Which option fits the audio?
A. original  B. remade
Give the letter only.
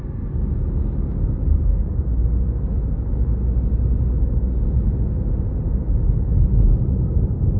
A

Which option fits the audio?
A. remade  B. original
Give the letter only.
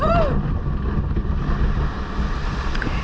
B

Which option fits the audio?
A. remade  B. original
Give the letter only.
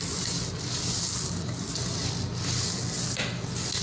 B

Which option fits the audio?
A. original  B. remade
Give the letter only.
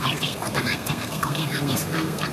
B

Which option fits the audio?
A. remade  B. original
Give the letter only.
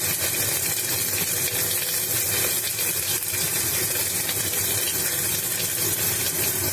B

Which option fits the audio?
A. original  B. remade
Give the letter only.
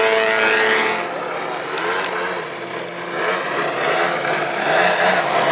A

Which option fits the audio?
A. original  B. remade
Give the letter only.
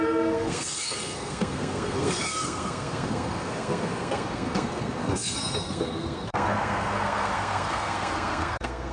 B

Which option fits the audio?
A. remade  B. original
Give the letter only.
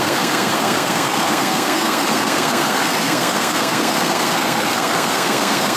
A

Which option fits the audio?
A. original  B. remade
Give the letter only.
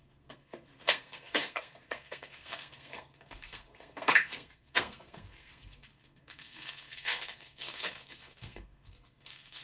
B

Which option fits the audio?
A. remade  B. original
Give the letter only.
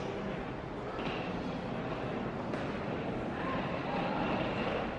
B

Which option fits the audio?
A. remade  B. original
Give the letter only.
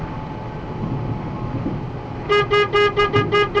B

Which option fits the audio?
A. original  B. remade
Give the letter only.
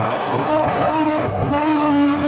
B